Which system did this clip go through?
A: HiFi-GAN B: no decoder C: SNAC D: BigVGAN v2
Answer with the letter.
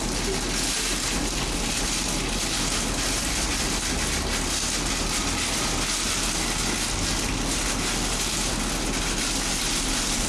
B